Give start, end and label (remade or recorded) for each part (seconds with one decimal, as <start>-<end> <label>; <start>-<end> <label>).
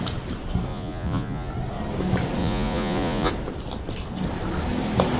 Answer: 0.0-0.7 recorded; 0.7-1.5 remade; 1.5-2.4 recorded; 2.4-3.3 remade; 3.3-5.2 recorded